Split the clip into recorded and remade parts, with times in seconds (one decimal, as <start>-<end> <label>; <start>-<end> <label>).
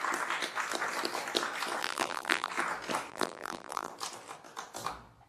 0.0-1.8 recorded; 1.8-2.5 remade; 2.5-3.1 recorded; 3.1-3.9 remade; 3.9-5.3 recorded